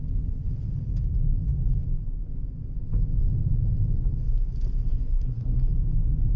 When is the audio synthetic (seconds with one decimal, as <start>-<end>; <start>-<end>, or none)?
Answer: 4.9-5.7